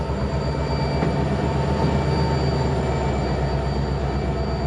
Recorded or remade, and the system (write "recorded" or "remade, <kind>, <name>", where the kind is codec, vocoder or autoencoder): recorded